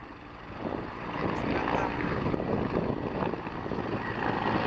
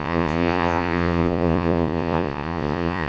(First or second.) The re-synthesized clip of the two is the second